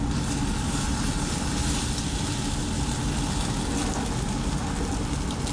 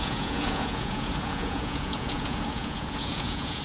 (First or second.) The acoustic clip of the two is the first